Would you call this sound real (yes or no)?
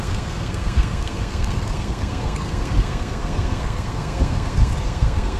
no